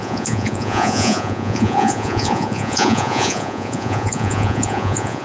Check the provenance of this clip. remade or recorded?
remade